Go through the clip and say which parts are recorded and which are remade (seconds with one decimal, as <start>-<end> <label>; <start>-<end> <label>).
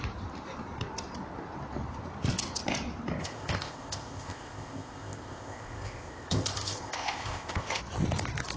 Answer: 0.0-3.2 recorded; 3.2-7.8 remade; 7.8-8.6 recorded